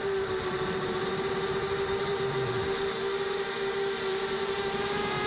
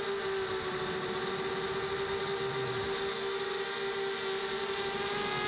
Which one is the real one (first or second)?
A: second